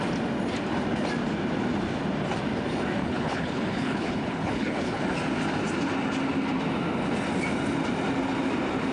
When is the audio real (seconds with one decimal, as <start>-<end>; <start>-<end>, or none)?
0.0-3.0; 5.0-8.9